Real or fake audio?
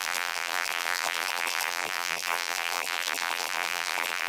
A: fake